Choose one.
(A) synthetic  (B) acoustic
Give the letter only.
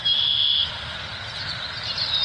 B